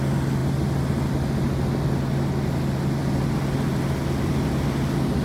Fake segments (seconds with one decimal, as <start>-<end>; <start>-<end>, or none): none